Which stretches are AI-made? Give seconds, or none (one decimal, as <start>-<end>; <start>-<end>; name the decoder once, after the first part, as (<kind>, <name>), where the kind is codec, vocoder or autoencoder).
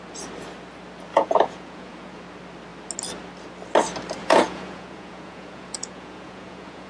1.1-2.2 (vocoder, Vocos); 4.2-6.9